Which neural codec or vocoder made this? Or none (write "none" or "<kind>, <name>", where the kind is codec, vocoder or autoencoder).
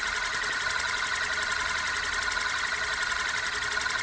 none